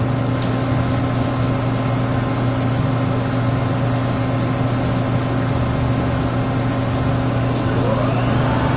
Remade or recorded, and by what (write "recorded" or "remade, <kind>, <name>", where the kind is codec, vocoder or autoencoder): recorded